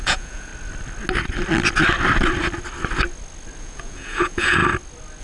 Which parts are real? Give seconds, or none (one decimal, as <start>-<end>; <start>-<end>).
0.5-3.6; 4.6-5.2